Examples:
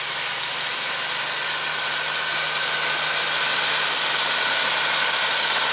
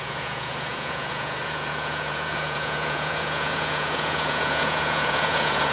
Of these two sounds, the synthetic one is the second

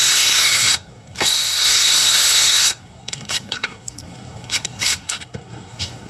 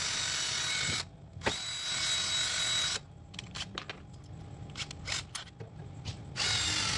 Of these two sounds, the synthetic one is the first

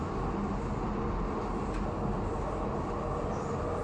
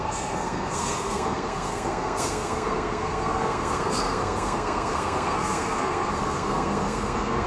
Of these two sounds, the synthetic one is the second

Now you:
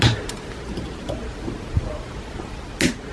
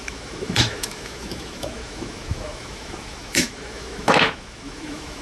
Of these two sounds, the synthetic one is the second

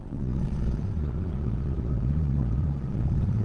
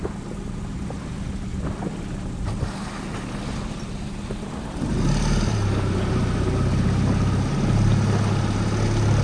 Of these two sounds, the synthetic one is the first